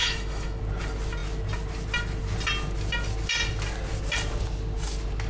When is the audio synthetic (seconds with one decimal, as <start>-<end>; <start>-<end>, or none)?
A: 0.0-0.6